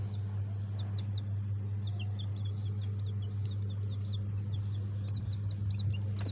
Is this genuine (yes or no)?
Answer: yes